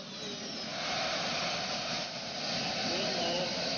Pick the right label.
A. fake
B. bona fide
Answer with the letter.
B